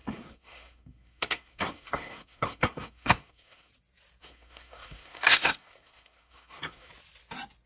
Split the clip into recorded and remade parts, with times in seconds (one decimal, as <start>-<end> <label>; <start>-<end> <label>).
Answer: 0.0-3.7 remade; 3.7-4.2 recorded; 4.2-6.9 remade; 6.9-7.7 recorded